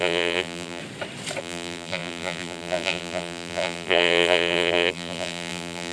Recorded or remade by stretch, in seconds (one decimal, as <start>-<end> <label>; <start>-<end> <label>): 0.0-0.8 remade; 0.8-1.4 recorded; 1.4-5.9 remade